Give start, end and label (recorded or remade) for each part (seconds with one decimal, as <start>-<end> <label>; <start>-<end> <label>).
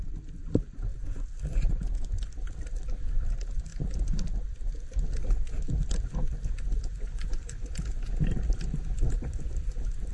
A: 0.0-6.9 recorded; 6.9-7.7 remade; 7.7-10.1 recorded